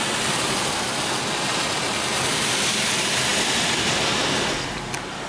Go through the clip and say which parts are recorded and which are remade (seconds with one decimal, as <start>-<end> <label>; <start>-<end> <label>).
0.0-5.3 recorded